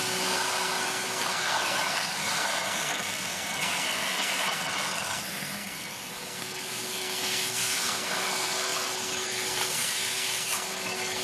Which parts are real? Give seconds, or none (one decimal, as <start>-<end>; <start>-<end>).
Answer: none